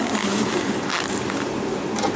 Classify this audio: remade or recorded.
recorded